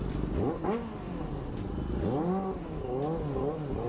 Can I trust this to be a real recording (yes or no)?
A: yes